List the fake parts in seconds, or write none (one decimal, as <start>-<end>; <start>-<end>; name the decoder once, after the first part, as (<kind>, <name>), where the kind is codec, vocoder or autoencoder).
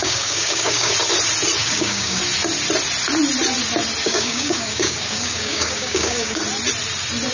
0.0-0.9 (codec, DAC); 1.6-2.2; 4.0-6.4